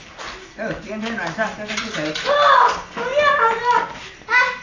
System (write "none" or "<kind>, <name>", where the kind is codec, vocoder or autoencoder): none